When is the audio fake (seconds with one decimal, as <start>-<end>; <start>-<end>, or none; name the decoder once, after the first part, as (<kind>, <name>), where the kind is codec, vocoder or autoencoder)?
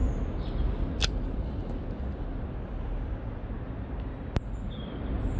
none